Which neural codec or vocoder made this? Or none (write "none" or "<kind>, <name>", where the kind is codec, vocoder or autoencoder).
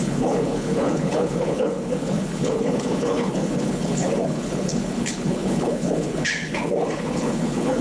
codec, HILCodec